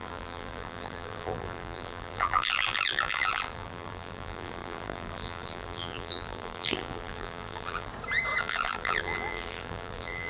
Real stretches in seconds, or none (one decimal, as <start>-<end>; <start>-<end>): 7.9-8.4